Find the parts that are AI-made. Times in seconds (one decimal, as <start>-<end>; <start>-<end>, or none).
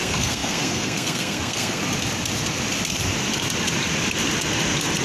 0.0-1.8